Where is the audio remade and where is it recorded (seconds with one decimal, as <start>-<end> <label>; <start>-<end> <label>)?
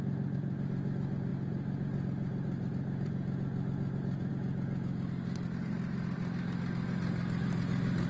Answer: 0.0-8.1 recorded